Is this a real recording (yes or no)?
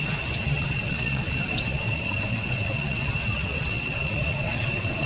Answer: no